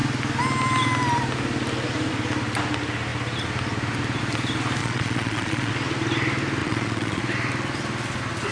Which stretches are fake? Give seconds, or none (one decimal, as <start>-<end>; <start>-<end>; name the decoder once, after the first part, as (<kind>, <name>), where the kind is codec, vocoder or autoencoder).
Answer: 4.8-5.7 (vocoder, Vocos); 6.6-7.2